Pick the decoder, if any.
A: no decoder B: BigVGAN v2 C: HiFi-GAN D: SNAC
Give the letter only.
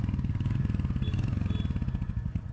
A